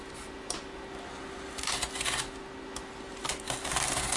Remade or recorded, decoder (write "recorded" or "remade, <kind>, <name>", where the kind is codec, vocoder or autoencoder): recorded